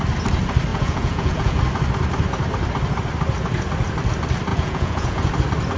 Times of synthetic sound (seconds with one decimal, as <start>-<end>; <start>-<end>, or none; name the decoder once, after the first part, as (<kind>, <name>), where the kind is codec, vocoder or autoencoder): 0.7-1.6 (vocoder, Vocos); 4.5-5.3